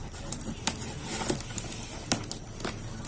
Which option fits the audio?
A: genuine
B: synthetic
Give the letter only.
A